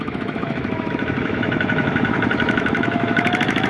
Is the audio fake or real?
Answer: fake